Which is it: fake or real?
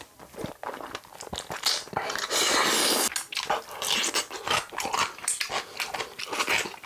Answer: real